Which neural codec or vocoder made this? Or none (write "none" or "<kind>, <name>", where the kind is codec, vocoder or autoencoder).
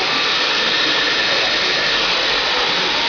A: none